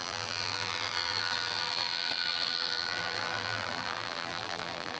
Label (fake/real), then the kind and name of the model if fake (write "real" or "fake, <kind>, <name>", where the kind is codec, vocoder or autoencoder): fake, vocoder, BigVGAN v2